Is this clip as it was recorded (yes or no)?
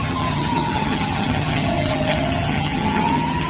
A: no